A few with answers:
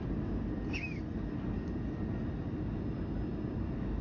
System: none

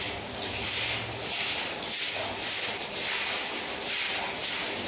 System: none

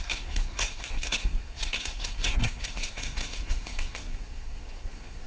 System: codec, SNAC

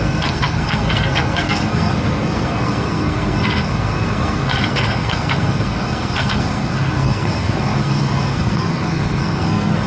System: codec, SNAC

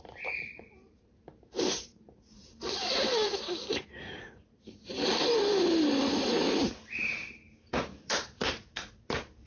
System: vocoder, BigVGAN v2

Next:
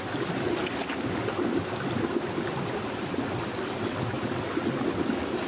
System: none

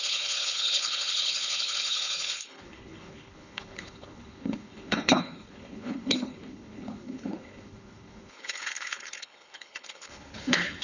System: codec, HILCodec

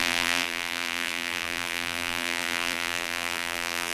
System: vocoder, BigVGAN v2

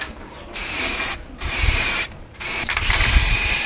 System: vocoder, BigVGAN v2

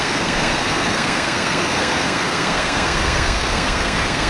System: codec, SNAC